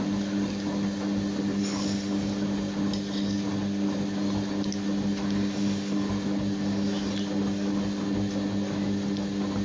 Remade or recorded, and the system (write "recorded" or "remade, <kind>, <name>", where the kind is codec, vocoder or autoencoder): recorded